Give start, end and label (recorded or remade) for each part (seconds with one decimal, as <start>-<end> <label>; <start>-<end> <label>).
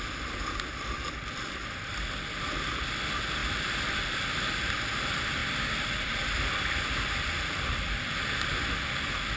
0.0-3.4 recorded; 3.4-4.5 remade; 4.5-5.4 recorded; 5.4-8.4 remade; 8.4-9.4 recorded